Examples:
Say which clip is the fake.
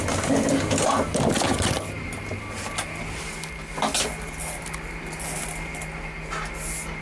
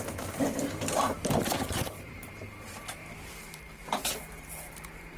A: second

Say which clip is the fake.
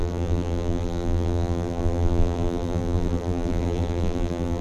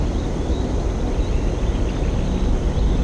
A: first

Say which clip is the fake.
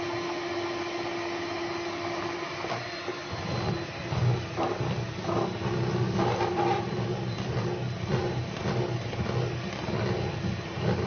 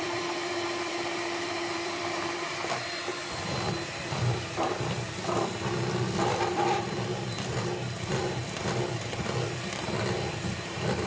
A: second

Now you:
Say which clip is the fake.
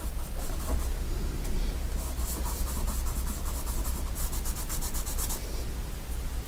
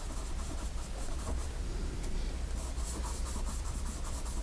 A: second